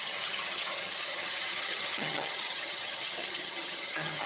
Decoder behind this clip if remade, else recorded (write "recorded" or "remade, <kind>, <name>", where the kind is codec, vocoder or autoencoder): remade, vocoder, HiFi-GAN